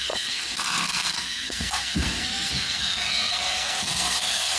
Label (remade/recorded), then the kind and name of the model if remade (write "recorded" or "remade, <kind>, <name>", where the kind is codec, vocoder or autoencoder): remade, codec, SNAC